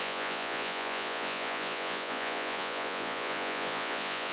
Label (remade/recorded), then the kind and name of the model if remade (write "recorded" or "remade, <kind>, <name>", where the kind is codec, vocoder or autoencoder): remade, vocoder, Vocos